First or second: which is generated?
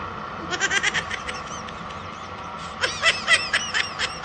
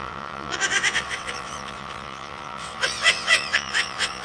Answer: second